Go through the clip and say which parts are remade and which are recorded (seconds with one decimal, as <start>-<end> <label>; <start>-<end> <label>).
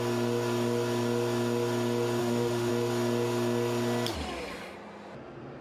0.0-2.2 recorded; 2.2-2.7 remade; 2.7-5.6 recorded